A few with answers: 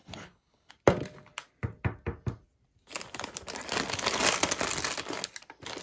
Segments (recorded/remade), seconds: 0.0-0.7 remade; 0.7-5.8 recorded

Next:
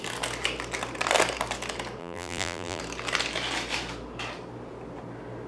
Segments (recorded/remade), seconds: 0.0-2.0 recorded; 2.0-2.8 remade; 2.8-5.5 recorded

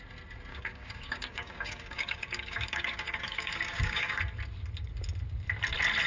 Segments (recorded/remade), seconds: 0.0-0.5 recorded; 0.5-4.2 remade; 4.2-6.1 recorded